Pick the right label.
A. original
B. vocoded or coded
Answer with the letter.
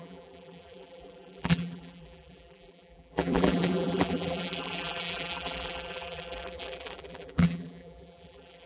B